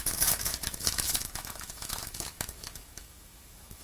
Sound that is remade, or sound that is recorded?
remade